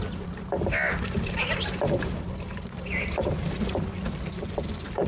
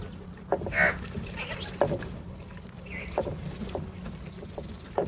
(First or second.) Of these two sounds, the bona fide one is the second